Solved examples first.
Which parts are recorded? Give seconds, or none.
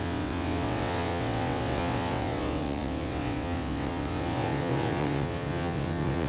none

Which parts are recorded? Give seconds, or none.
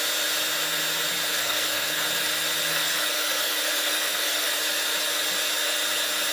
0.0-1.3; 2.0-2.7; 4.5-6.3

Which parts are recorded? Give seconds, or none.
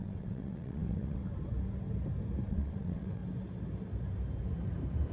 1.2-2.5; 3.2-5.1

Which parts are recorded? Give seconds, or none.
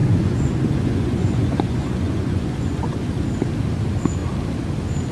3.1-5.1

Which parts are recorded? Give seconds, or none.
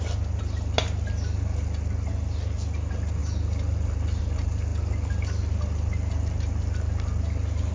0.0-7.7